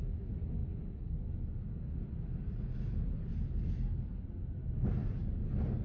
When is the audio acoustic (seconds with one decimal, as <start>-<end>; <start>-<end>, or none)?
0.0-5.8